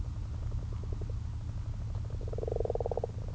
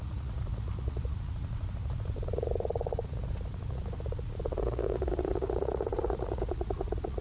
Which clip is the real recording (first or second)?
first